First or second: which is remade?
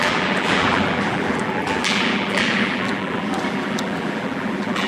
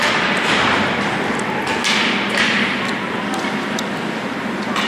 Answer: first